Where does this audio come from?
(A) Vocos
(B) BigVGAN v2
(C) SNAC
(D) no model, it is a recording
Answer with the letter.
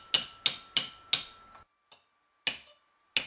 D